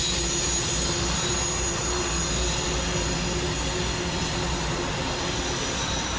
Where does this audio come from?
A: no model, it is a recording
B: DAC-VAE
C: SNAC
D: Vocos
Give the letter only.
A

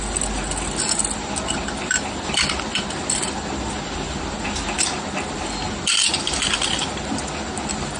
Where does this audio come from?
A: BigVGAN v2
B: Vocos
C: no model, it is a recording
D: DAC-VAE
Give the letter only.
C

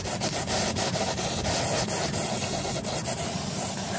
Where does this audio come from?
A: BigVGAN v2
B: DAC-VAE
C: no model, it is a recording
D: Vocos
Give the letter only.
C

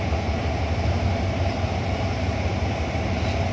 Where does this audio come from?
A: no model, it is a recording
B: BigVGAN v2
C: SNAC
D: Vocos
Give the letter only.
A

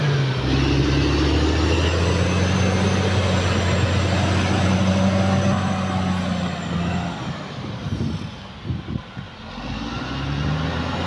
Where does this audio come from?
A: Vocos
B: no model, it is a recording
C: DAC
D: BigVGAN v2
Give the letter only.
B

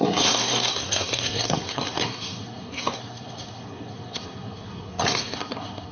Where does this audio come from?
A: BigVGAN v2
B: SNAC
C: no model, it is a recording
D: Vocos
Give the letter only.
B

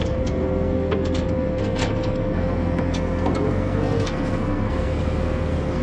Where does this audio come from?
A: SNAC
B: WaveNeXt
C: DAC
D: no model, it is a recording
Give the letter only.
A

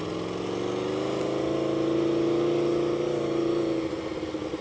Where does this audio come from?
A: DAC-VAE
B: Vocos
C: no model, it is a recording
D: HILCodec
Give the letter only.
C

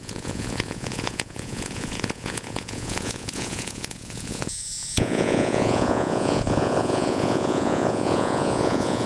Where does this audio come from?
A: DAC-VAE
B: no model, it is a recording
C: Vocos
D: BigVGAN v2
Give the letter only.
C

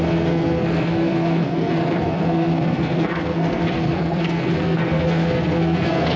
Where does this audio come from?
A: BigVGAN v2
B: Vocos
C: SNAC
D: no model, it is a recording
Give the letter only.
C